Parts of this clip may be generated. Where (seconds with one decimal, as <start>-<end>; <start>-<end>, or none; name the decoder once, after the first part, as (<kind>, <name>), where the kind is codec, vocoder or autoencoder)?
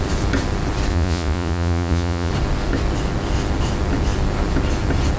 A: 0.9-2.3 (vocoder, Vocos)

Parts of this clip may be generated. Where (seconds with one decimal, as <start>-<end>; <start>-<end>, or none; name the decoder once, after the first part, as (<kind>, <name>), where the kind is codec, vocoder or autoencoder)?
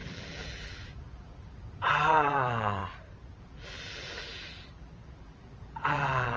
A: 0.0-2.8 (vocoder, BigVGAN v2); 3.4-6.4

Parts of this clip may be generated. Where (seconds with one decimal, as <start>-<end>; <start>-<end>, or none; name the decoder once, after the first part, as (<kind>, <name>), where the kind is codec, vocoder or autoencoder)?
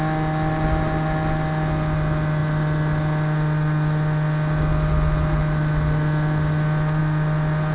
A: none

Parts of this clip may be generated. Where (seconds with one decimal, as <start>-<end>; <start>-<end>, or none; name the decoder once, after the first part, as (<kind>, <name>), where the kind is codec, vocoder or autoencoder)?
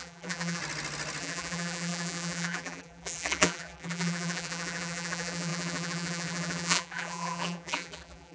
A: 0.0-0.6 (vocoder, BigVGAN v2); 1.2-8.3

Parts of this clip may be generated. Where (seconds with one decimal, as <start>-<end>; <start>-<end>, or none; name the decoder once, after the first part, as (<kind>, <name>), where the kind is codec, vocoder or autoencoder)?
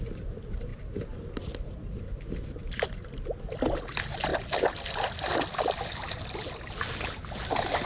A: none